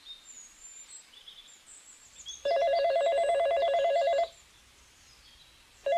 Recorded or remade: remade